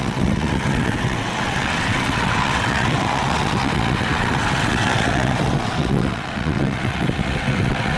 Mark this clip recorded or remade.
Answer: remade